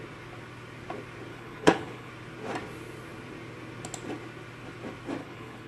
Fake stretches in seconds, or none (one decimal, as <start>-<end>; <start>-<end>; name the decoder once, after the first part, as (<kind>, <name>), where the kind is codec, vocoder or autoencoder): 1.3-2.1 (codec, HILCodec); 5.2-5.7